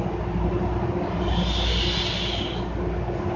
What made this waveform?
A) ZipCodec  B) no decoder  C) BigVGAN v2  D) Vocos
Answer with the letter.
B